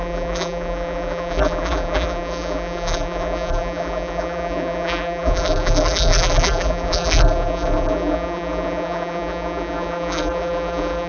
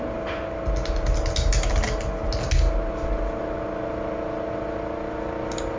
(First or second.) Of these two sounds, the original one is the second